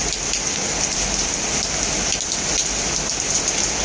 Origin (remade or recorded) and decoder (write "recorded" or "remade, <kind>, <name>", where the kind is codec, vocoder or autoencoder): recorded